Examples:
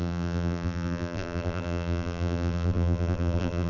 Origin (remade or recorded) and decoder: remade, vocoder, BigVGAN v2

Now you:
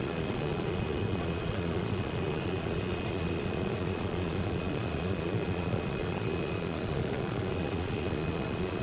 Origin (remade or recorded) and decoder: remade, vocoder, Vocos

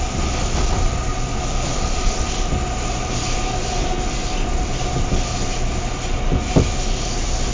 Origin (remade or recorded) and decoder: recorded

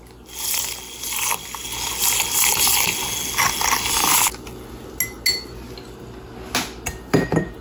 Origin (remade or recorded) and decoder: recorded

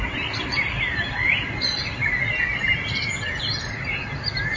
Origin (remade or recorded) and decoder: recorded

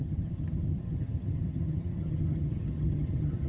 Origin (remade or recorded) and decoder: remade, vocoder, HiFi-GAN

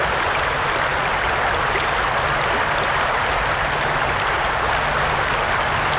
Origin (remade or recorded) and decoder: recorded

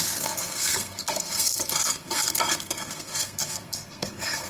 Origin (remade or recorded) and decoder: remade, codec, SNAC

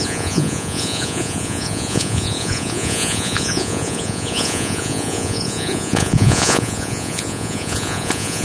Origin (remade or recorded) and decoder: remade, vocoder, Vocos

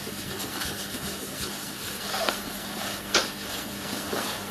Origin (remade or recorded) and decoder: remade, codec, SNAC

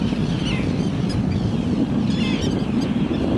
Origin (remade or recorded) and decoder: recorded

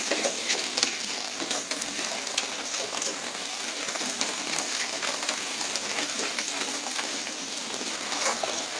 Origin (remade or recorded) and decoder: remade, codec, DAC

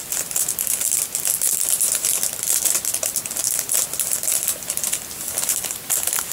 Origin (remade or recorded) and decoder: recorded